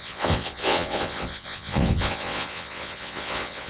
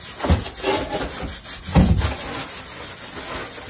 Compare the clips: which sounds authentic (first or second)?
second